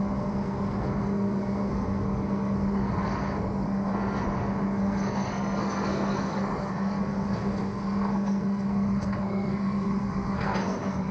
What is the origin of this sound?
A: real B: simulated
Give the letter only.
B